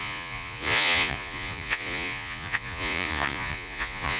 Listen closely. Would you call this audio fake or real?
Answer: fake